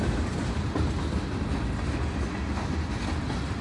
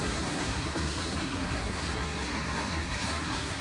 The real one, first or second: first